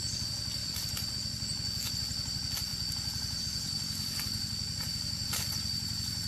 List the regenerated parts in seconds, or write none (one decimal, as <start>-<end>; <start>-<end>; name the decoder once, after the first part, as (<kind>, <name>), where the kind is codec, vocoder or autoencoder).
none

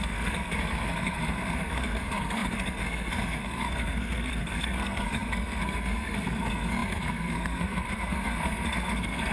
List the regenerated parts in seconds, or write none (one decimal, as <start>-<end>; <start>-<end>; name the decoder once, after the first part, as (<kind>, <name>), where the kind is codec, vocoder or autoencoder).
0.0-9.3 (codec, SNAC)

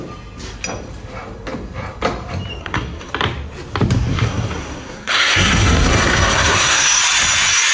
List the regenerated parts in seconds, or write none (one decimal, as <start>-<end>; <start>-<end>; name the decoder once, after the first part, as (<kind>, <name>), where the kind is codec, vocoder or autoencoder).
2.6-3.1 (codec, SNAC); 4.1-7.0

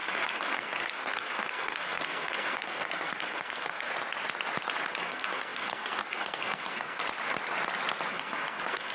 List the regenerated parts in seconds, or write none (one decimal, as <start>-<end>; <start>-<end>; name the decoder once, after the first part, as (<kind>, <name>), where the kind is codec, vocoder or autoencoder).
0.0-3.9 (codec, SNAC); 4.9-7.0; 8.1-8.9

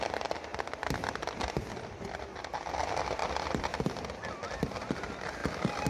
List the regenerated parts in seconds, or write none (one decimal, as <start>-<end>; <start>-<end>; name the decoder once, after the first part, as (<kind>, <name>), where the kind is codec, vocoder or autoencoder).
none

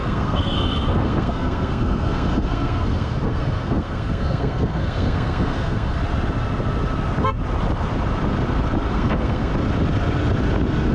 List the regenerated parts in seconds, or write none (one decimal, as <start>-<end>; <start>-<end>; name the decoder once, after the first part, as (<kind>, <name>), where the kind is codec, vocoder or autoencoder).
0.0-6.0 (codec, SNAC); 8.9-9.5

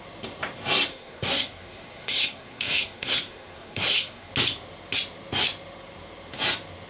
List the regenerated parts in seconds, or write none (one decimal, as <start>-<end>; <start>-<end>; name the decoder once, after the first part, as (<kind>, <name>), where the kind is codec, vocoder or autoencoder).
0.9-4.3 (codec, SNAC)